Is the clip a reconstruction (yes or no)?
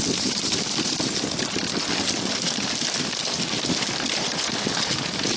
no